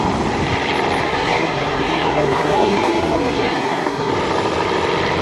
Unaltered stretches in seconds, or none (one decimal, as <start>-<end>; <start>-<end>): 0.0-1.0; 4.1-5.2

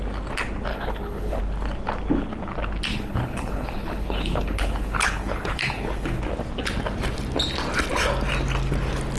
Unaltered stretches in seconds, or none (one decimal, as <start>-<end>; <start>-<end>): 0.0-0.7; 1.4-2.9; 6.2-9.2

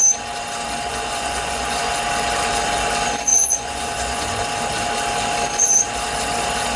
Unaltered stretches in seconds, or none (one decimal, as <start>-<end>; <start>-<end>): 0.0-0.9; 1.9-3.3; 4.4-6.8

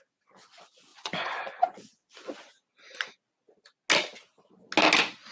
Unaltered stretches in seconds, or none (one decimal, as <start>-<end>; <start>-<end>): 0.0-0.9; 1.9-5.3

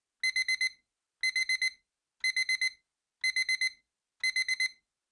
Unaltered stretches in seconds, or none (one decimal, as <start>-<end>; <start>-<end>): 0.0-5.1

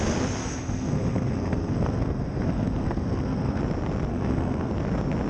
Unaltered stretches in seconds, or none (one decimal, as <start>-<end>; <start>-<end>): 0.0-0.4; 3.6-4.1; 4.7-5.3

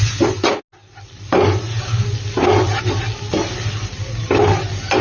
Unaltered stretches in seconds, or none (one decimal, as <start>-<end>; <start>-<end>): 0.0-5.0

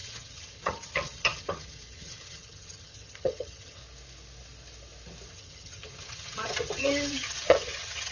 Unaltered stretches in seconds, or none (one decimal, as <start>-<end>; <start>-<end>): 3.8-5.3